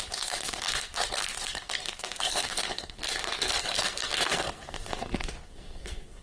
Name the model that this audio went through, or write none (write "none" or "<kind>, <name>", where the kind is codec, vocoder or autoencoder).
codec, SNAC